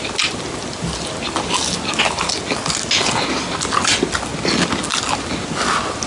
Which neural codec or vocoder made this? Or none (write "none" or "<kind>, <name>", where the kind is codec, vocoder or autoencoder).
none